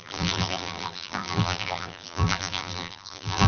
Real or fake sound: fake